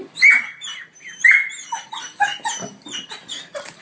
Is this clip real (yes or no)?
yes